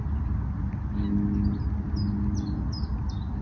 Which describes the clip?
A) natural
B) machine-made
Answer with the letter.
A